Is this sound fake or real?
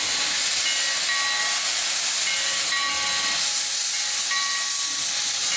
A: real